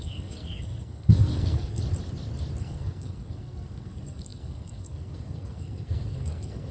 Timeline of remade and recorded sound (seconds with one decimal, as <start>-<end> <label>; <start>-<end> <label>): 0.0-1.8 remade; 1.8-2.6 recorded; 2.6-6.7 remade